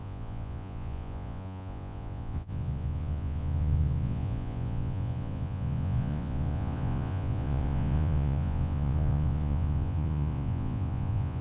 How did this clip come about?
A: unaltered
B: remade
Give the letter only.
B